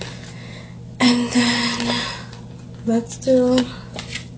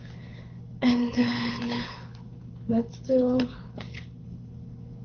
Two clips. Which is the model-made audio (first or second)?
second